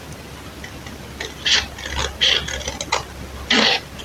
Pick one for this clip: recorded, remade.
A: recorded